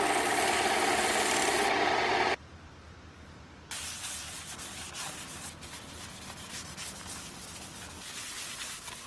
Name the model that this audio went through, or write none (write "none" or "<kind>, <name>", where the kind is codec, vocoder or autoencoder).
none